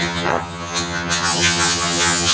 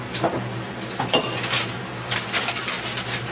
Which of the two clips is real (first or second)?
second